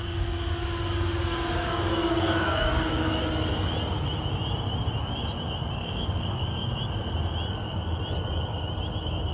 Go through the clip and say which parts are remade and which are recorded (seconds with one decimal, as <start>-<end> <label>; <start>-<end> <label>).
0.0-3.2 remade; 3.2-5.8 recorded; 5.8-6.8 remade; 6.8-9.3 recorded